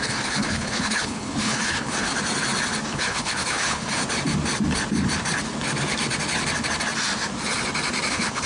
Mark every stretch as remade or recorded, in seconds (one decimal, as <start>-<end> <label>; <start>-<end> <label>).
0.0-2.1 remade; 2.1-2.9 recorded; 2.9-4.0 remade; 4.0-8.1 recorded; 8.1-8.5 remade